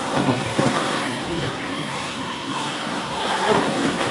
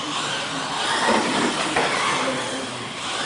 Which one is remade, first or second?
first